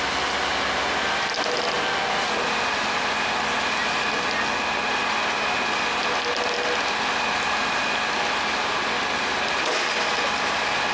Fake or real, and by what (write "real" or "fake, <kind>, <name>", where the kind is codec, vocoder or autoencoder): real